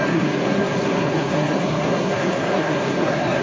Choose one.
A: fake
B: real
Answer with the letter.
A